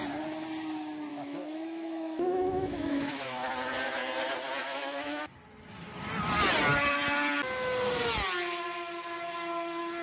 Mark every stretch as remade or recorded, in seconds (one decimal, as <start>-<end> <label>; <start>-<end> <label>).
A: 0.0-1.1 recorded; 1.1-3.5 remade; 3.5-4.6 recorded; 4.6-5.2 remade; 5.2-10.0 recorded